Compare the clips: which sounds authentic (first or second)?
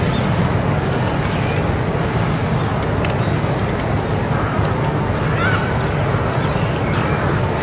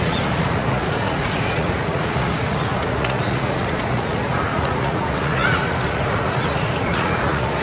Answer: first